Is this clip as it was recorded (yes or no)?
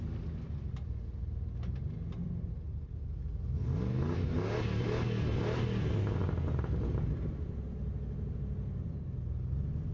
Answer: yes